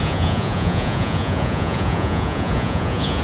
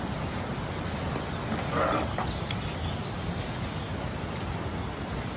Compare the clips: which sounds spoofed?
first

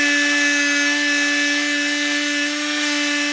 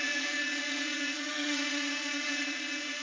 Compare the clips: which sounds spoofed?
second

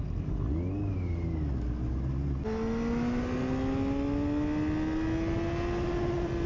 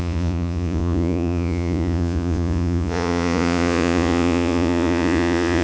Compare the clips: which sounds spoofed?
second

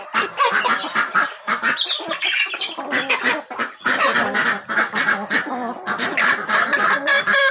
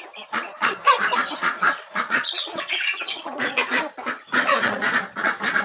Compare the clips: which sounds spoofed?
second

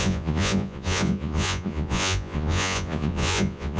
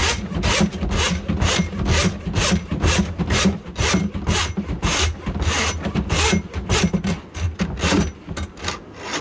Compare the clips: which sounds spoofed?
first